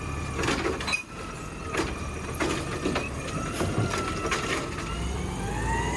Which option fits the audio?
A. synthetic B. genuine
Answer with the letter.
B